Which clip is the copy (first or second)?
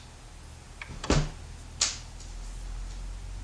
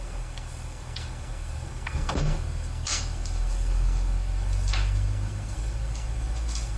second